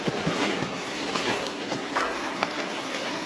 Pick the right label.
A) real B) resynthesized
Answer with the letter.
B